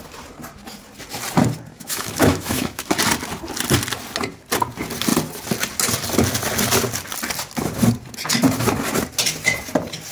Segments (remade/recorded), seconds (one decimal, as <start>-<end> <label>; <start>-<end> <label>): 0.0-1.7 recorded; 1.7-2.9 remade; 2.9-10.1 recorded